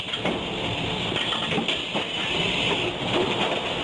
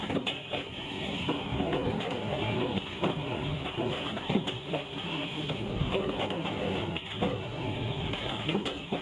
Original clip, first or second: first